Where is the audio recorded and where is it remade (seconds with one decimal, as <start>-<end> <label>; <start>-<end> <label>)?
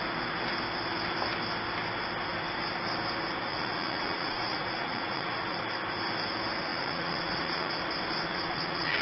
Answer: 0.0-3.5 recorded; 3.5-5.6 remade; 5.6-6.7 recorded; 6.7-7.7 remade; 7.7-8.3 recorded; 8.3-9.0 remade